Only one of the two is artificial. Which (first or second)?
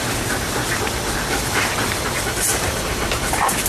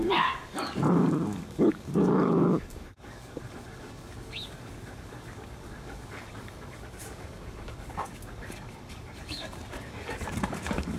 second